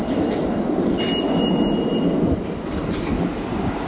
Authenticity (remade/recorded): remade